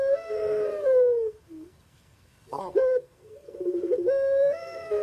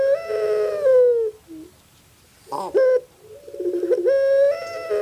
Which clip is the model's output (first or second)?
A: first